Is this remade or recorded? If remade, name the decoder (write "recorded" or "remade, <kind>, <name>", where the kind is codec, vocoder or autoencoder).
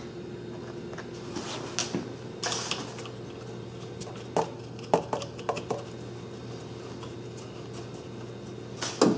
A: recorded